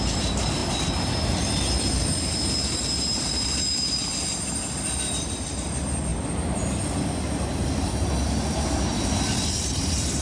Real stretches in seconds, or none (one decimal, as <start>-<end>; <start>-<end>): 0.0-10.2